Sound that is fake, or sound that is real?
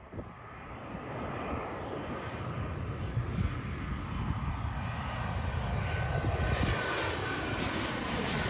real